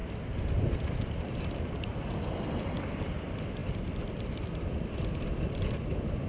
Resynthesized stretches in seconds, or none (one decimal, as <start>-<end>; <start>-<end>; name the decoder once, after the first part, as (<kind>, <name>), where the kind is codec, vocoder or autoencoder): 0.0-2.8 (vocoder, BigVGAN v2); 3.6-5.6